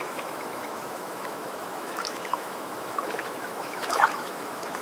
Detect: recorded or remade remade